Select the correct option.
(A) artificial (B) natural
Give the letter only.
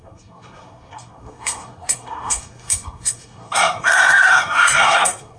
A